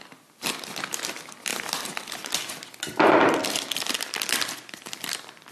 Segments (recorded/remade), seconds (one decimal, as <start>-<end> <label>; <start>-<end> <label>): 0.0-1.5 remade; 1.5-2.6 recorded; 2.6-5.5 remade